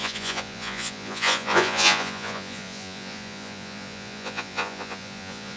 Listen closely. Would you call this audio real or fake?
fake